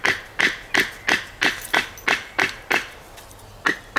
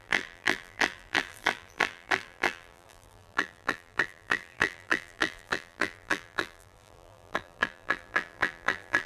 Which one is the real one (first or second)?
first